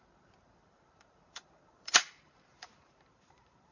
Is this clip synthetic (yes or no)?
yes